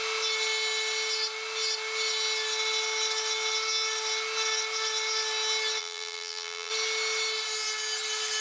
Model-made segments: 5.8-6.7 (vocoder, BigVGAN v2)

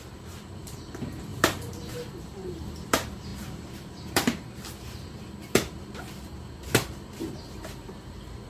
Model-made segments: 0.0-8.5 (vocoder, BigVGAN v2)

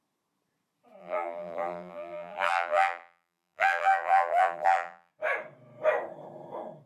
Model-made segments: 1.0-5.1 (vocoder, BigVGAN v2)

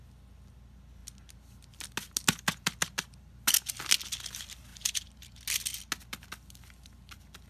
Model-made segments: 4.7-5.4 (vocoder, BigVGAN v2)

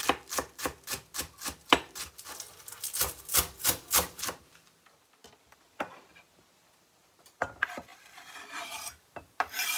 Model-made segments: 0.0-5.2 (vocoder, BigVGAN v2); 6.5-9.8

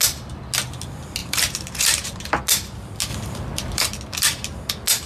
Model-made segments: 1.2-2.4 (vocoder, BigVGAN v2); 3.1-3.8